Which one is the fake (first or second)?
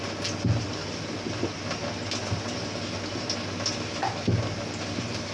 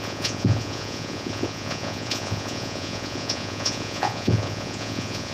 second